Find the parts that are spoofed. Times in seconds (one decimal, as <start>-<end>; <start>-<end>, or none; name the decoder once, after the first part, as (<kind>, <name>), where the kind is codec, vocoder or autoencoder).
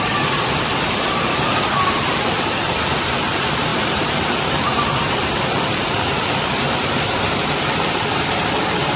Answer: 0.0-9.0 (vocoder, BigVGAN v2)